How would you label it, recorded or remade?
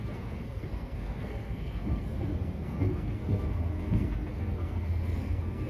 remade